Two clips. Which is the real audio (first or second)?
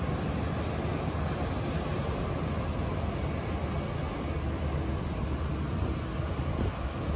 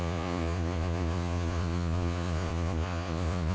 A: first